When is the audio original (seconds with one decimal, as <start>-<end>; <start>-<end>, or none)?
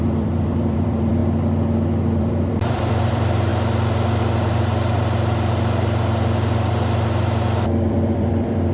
1.2-2.2; 3.5-7.9